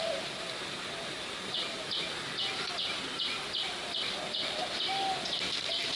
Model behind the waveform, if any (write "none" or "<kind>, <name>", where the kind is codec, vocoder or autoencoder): none